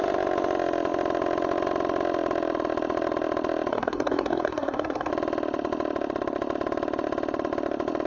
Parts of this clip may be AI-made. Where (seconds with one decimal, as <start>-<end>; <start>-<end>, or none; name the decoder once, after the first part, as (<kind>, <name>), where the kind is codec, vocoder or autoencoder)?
3.7-5.1 (codec, SNAC)